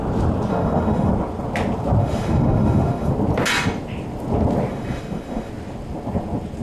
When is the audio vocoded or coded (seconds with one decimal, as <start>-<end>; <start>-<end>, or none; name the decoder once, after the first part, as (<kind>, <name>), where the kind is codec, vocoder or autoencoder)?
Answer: 0.5-1.1 (autoencoder, DAC-VAE); 2.0-3.1; 4.7-5.5